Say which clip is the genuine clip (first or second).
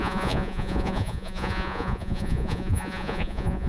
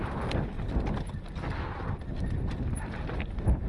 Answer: second